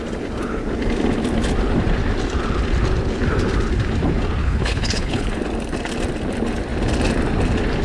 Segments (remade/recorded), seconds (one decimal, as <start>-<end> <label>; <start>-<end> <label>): 0.0-4.4 recorded; 4.4-5.4 remade; 5.4-7.8 recorded